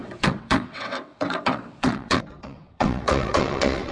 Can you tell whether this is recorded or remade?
remade